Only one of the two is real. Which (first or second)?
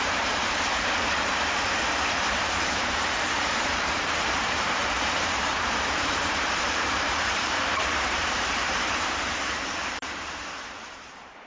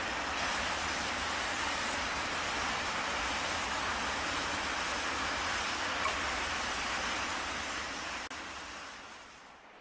second